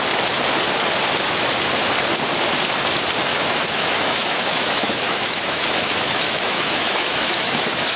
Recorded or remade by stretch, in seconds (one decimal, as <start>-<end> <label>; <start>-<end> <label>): 0.0-3.3 recorded; 3.3-8.0 remade